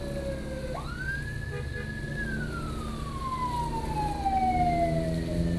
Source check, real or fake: real